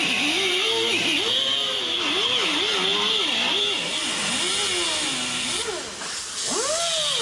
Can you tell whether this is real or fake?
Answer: real